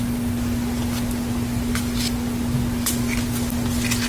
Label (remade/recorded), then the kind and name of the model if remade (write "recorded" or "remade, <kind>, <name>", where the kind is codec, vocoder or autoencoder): recorded